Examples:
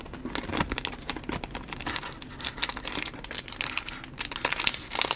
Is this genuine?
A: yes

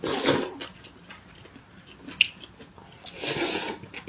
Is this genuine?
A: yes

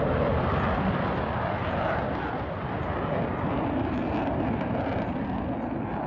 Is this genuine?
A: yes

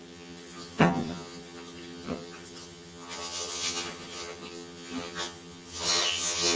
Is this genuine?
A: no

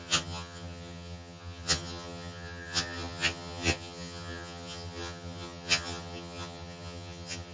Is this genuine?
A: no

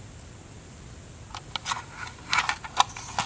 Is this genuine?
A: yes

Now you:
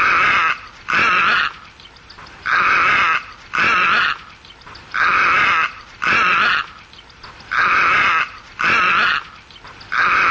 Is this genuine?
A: yes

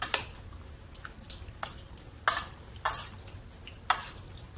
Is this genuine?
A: yes